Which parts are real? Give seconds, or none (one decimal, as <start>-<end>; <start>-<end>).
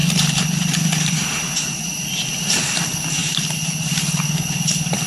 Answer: 2.8-3.2; 4.2-5.1